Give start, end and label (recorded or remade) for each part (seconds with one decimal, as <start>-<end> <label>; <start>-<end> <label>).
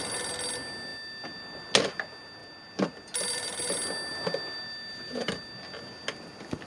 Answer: 0.0-6.7 recorded